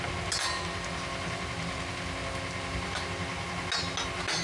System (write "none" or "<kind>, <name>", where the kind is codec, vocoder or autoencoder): none